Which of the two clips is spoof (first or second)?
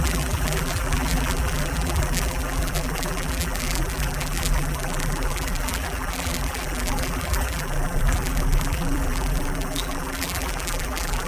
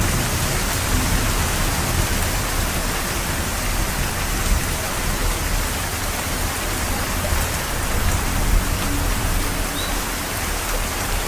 first